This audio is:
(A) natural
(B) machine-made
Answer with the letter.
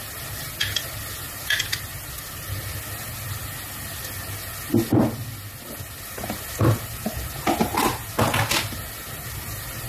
A